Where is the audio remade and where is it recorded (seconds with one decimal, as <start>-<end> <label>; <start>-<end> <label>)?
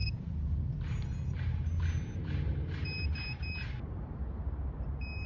0.0-5.3 remade